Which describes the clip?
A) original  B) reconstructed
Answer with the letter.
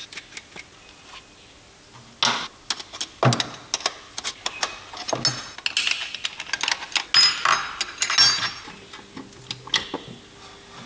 A